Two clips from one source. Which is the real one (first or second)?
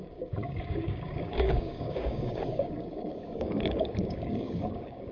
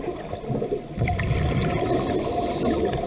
second